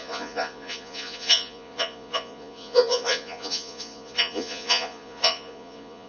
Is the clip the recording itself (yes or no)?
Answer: no